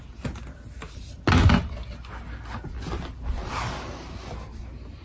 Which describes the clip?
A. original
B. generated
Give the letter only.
A